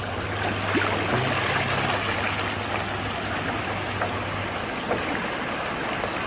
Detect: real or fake real